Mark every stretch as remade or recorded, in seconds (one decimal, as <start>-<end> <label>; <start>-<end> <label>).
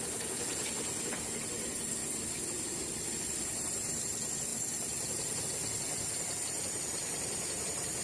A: 0.0-8.0 recorded